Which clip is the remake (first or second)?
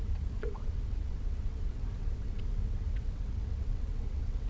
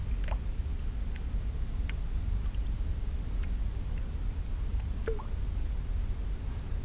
first